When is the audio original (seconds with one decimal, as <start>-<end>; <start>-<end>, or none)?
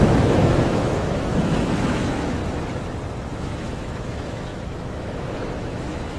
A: 2.4-3.3